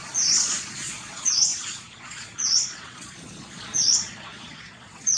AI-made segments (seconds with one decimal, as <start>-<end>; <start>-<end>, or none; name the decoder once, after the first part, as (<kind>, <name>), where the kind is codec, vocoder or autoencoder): 0.0-5.2 (vocoder, Vocos)

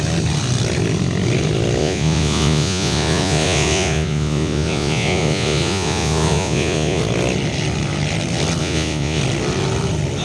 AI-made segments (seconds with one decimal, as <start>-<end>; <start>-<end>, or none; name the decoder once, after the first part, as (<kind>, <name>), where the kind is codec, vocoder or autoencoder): 1.8-7.0 (vocoder, Vocos); 8.6-9.2